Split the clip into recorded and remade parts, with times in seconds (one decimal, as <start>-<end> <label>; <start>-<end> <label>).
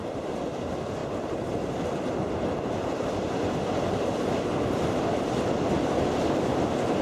0.0-1.0 recorded; 1.0-1.8 remade; 1.8-7.0 recorded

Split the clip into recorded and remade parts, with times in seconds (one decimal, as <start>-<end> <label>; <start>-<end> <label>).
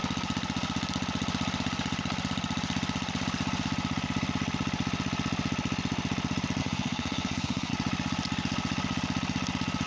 0.0-6.6 recorded; 6.6-7.7 remade; 7.7-9.9 recorded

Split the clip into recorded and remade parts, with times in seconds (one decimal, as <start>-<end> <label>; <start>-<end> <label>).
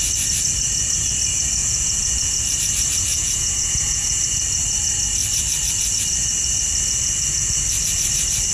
0.0-1.6 recorded; 1.6-2.4 remade; 2.4-3.1 recorded; 3.1-4.2 remade; 4.2-8.5 recorded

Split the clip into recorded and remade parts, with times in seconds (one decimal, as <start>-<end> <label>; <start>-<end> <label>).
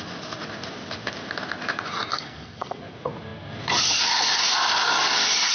0.0-2.1 recorded; 2.1-2.8 remade; 2.8-5.5 recorded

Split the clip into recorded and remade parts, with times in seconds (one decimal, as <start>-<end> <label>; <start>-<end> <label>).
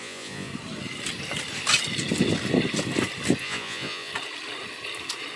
0.0-0.5 remade; 0.5-3.4 recorded; 3.4-4.1 remade; 4.1-5.4 recorded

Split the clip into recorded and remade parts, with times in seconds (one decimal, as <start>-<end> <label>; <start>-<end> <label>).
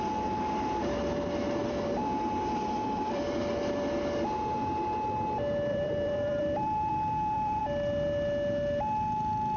0.0-1.6 recorded; 1.6-3.4 remade; 3.4-5.7 recorded; 5.7-7.6 remade; 7.6-9.6 recorded